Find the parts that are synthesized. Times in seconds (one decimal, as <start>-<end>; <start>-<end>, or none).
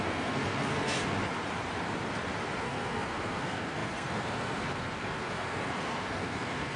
0.0-1.0; 2.6-6.8